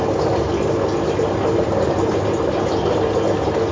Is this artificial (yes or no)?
no